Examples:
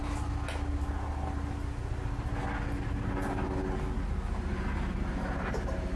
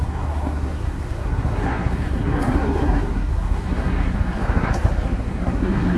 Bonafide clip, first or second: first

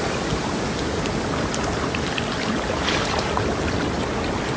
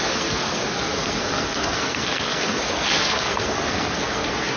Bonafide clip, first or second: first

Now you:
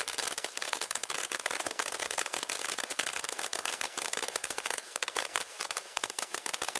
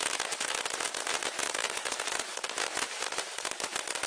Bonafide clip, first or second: second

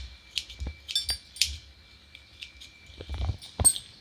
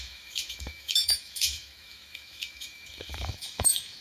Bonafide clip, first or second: first